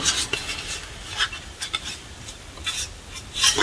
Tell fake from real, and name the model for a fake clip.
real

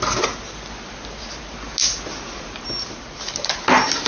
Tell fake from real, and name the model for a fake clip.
real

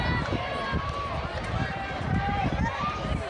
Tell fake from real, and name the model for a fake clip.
real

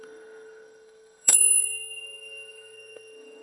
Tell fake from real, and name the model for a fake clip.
fake, codec, SNAC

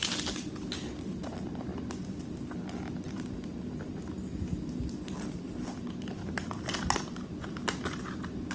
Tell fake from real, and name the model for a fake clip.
real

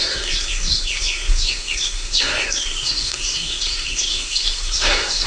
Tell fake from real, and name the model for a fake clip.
fake, codec, SNAC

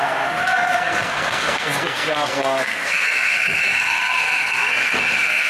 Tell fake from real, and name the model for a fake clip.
fake, codec, SNAC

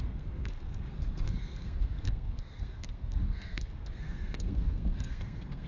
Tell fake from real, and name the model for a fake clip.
fake, codec, SNAC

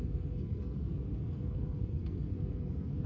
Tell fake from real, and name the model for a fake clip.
fake, codec, SNAC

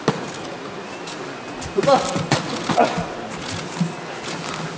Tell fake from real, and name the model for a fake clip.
real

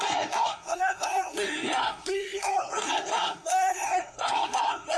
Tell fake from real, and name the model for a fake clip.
fake, codec, SNAC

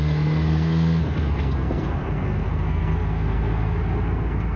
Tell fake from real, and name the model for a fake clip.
fake, codec, SNAC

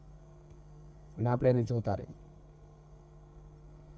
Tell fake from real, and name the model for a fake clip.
fake, codec, SNAC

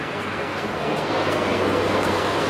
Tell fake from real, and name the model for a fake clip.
fake, codec, SNAC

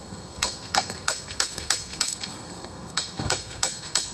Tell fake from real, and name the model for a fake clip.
fake, codec, SNAC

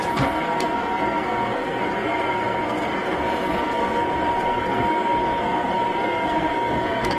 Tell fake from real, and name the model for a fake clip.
fake, codec, SNAC